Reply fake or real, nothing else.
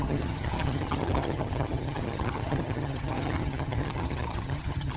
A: fake